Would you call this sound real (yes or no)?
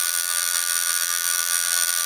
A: no